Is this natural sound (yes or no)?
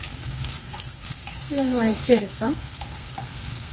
no